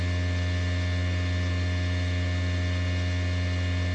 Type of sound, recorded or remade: recorded